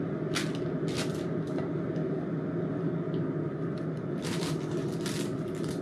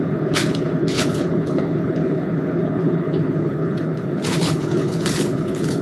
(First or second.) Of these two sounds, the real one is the first